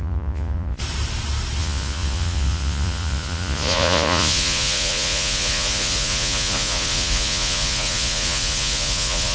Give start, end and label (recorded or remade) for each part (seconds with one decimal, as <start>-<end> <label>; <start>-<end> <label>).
0.0-0.8 remade; 0.8-1.6 recorded; 1.6-9.3 remade